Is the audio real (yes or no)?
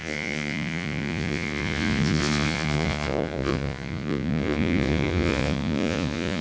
no